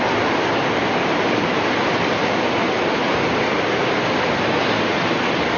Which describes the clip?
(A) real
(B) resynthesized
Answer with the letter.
A